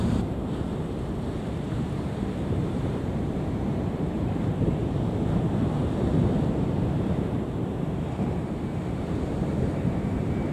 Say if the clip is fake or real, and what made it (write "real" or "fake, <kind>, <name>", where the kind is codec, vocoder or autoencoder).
fake, vocoder, BigVGAN v2